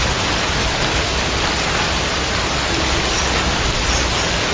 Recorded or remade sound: recorded